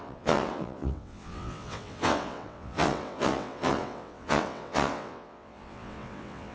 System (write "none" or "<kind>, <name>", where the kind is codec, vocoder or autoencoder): vocoder, WaveNeXt